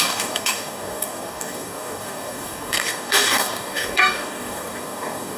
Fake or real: fake